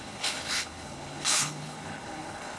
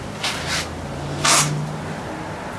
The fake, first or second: first